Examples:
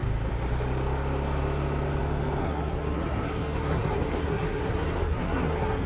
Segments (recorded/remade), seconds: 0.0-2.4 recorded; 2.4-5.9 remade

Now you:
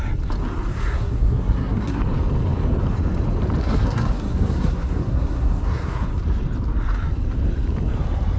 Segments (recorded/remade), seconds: 0.0-0.7 recorded; 0.7-2.0 remade; 2.0-3.6 recorded; 3.6-6.1 remade; 6.1-8.4 recorded

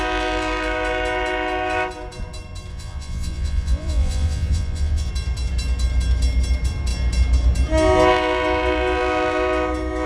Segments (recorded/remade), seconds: 0.0-2.7 recorded; 2.7-5.1 remade; 5.1-10.1 recorded

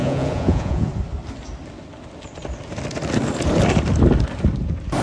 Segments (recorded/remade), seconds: 0.0-0.9 remade; 0.9-5.0 recorded